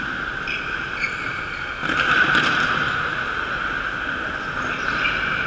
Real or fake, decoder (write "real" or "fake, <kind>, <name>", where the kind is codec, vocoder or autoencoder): real